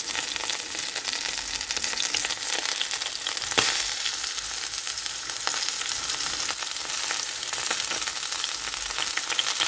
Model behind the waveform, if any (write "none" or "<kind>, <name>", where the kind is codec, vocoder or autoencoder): none